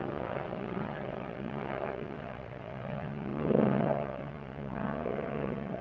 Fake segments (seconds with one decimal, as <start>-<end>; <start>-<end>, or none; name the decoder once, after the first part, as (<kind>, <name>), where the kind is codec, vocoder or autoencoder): 0.0-5.8 (vocoder, WaveNeXt)